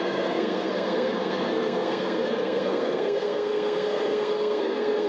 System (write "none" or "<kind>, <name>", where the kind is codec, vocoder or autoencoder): codec, SNAC